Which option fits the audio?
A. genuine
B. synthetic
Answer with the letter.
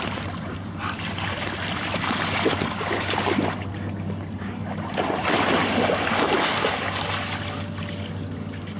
B